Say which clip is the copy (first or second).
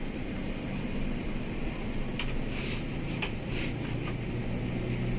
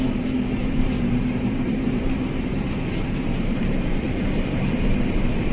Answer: second